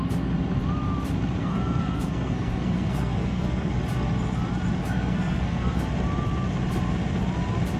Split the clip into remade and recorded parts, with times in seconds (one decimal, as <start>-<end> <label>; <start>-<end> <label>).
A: 0.0-1.4 recorded; 1.4-3.8 remade; 3.8-4.8 recorded; 4.8-5.8 remade; 5.8-7.8 recorded